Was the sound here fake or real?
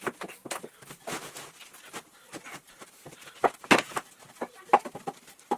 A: real